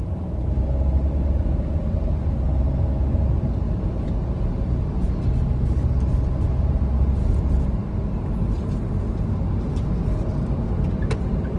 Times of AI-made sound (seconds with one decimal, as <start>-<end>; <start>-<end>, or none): none